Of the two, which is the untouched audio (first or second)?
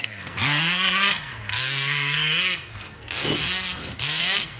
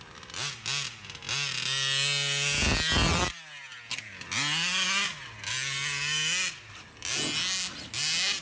second